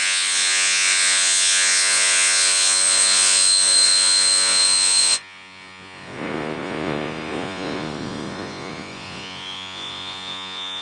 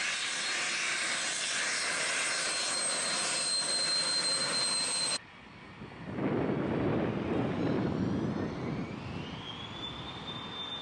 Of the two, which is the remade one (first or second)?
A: first